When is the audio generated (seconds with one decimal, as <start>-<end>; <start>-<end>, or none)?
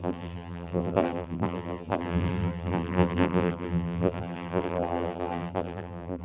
0.0-6.2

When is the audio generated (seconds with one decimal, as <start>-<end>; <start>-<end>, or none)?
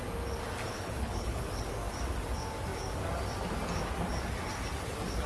0.7-1.5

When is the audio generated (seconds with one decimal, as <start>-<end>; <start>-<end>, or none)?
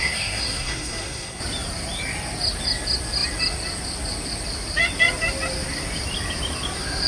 0.0-1.4